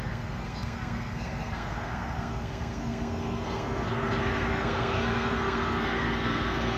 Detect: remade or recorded remade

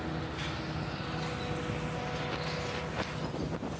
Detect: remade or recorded recorded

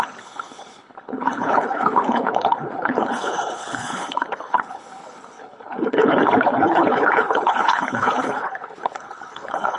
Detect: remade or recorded remade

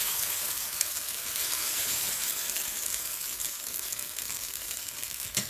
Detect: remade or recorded remade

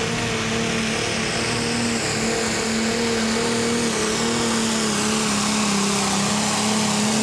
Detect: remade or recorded recorded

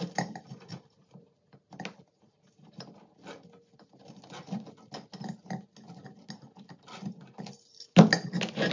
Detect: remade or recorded recorded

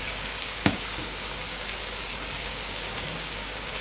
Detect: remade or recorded remade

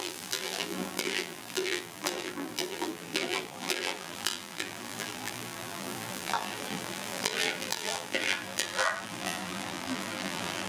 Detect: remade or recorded remade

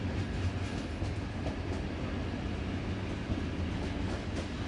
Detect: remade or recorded recorded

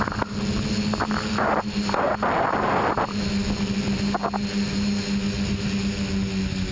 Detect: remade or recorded recorded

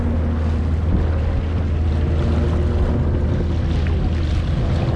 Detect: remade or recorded recorded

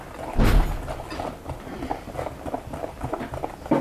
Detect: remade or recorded recorded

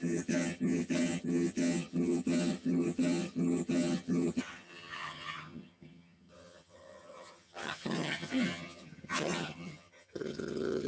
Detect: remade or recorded remade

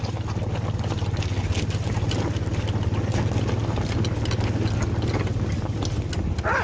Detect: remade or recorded recorded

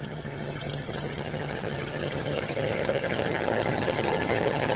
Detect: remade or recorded remade